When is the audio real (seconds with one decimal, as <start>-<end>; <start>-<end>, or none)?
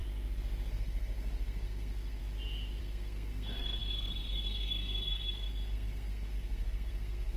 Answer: 0.0-0.7; 2.2-2.8